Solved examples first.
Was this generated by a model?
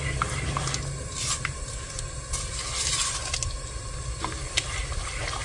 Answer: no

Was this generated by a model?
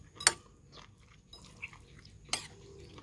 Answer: no